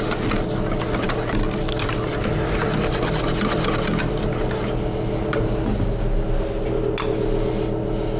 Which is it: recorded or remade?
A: recorded